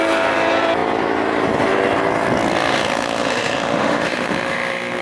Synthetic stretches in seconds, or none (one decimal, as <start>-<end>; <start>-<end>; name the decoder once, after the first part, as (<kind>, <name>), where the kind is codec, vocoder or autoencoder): 2.7-5.0 (autoencoder, DAC-VAE)